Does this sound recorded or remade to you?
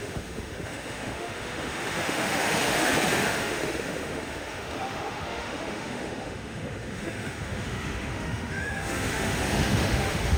remade